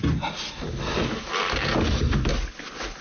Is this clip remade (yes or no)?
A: no